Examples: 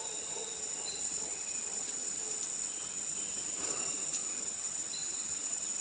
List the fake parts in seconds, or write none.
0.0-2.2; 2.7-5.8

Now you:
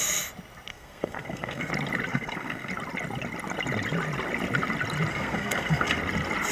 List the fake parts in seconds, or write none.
0.7-1.7; 2.1-2.7; 5.1-6.0

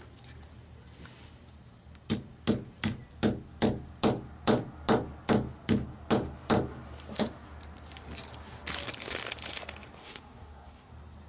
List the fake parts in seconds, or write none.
10.0-10.9

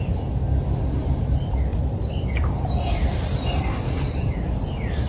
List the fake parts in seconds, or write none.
1.7-5.1